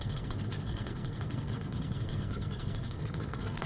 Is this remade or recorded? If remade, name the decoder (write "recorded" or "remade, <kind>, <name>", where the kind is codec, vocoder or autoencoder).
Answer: remade, codec, SNAC